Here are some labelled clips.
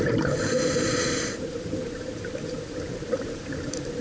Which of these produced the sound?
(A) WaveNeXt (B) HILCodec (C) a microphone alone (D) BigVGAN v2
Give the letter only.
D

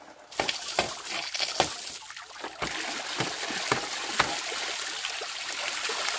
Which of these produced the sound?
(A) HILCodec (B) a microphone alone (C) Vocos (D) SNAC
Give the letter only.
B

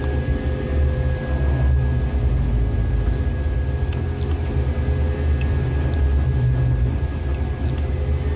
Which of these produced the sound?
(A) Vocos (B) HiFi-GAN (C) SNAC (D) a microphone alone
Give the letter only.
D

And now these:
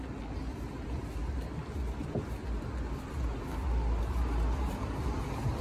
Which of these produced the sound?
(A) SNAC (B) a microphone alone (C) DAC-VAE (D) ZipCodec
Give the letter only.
B